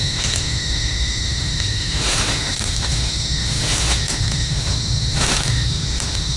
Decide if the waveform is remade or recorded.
remade